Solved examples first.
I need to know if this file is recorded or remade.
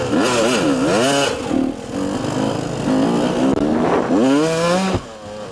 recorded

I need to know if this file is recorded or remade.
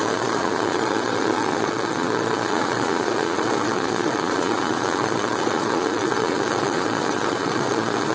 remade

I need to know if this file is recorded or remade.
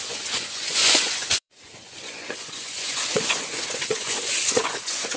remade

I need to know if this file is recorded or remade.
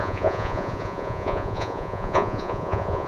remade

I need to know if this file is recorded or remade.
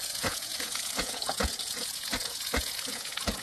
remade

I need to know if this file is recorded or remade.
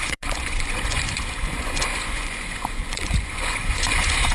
remade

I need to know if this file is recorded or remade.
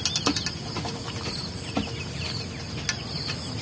recorded